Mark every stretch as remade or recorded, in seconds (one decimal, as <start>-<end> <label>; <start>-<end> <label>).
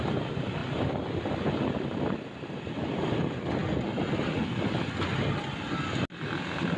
0.0-6.8 recorded